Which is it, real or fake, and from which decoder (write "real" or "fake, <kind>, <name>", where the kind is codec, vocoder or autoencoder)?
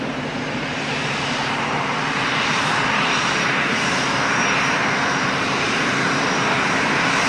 fake, vocoder, BigVGAN v2